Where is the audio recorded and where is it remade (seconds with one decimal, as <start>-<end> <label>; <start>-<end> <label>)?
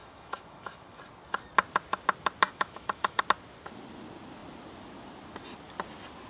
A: 0.0-1.0 remade; 1.0-2.5 recorded; 2.5-3.2 remade; 3.2-6.3 recorded